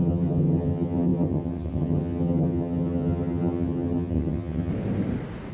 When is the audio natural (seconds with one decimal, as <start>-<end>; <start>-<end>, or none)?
4.7-5.5